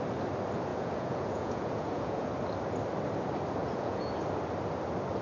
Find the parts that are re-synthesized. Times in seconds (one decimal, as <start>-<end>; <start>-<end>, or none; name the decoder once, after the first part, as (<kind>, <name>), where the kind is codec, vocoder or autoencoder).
0.7-2.3 (vocoder, Vocos); 3.6-4.1